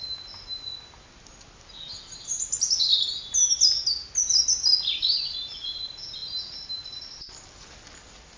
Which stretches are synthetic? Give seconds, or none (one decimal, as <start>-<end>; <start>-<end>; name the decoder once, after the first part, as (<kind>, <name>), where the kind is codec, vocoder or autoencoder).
none